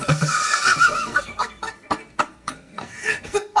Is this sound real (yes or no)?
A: no